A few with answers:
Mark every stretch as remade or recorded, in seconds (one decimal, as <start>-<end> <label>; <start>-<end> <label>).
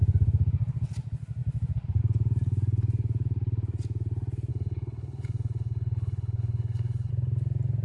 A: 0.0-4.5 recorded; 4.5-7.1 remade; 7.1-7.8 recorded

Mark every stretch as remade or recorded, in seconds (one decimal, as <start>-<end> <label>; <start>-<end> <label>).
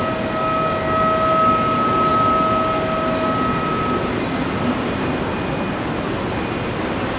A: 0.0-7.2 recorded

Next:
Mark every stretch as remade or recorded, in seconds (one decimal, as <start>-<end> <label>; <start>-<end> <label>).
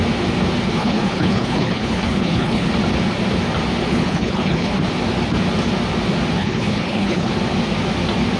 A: 0.0-0.7 recorded; 0.7-2.7 remade; 2.7-3.9 recorded; 3.9-4.7 remade; 4.7-6.4 recorded; 6.4-7.3 remade; 7.3-8.4 recorded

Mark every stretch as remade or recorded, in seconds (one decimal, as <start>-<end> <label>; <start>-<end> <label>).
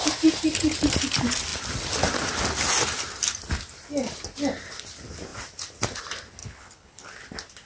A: 0.0-6.4 recorded; 6.4-7.1 remade; 7.1-7.7 recorded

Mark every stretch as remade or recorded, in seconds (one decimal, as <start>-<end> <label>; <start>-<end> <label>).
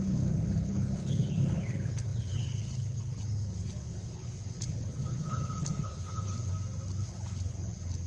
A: 0.0-6.5 remade; 6.5-7.0 recorded; 7.0-8.1 remade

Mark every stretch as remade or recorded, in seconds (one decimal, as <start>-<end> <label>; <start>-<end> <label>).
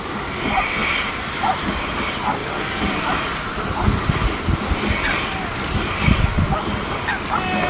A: 0.0-7.7 recorded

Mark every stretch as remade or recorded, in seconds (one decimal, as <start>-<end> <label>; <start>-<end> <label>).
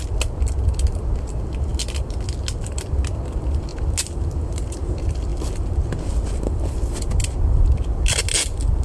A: 0.0-8.8 recorded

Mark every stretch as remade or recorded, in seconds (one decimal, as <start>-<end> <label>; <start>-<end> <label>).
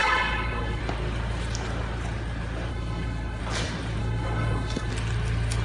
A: 0.0-0.8 remade; 0.8-2.7 recorded; 2.7-3.4 remade; 3.4-4.0 recorded; 4.0-4.9 remade; 4.9-5.6 recorded